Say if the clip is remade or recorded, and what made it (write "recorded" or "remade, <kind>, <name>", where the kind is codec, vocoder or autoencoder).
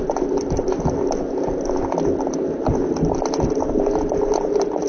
recorded